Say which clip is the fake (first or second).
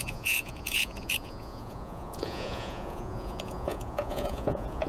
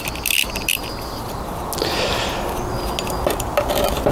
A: first